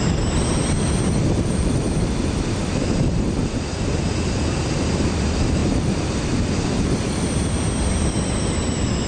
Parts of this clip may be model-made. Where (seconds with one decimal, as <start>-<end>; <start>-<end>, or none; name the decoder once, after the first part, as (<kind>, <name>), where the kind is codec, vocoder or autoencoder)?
none

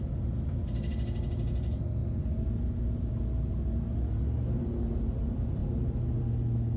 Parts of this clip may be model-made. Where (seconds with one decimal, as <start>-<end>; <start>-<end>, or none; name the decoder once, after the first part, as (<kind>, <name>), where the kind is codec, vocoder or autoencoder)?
none

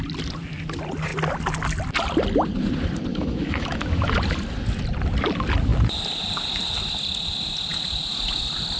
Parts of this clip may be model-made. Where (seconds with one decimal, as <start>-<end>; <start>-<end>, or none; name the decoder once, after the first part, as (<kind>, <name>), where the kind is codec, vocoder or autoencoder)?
3.1-3.8 (autoencoder, DAC-VAE)